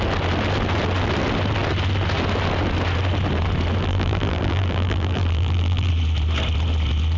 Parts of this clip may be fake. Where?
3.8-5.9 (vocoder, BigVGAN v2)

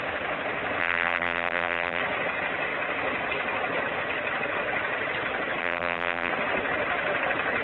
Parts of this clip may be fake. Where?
0.8-2.0 (vocoder, BigVGAN v2); 5.6-6.3

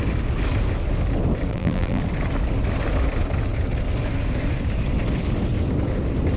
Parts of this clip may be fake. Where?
1.5-2.0 (vocoder, BigVGAN v2)

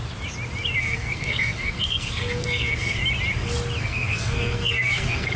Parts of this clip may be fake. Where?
0.8-3.0 (codec, SNAC); 3.8-5.4